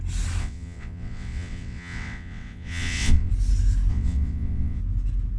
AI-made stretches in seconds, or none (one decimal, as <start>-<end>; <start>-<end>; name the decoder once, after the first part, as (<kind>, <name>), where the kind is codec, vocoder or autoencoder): 0.4-3.3 (vocoder, WaveNeXt); 3.9-4.8